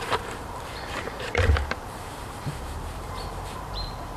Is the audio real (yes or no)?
no